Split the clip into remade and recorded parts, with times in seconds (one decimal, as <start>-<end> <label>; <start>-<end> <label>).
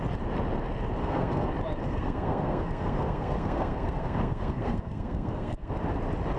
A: 0.0-1.0 recorded; 1.0-1.5 remade; 1.5-1.9 recorded; 1.9-5.7 remade; 5.7-6.4 recorded